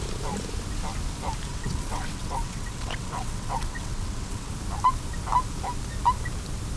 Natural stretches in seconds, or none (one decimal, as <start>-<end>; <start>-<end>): 0.0-1.5; 4.5-6.8